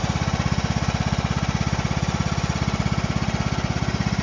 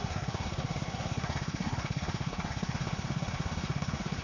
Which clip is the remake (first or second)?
second